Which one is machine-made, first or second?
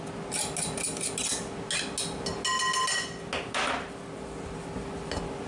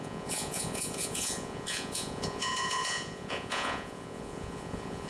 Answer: second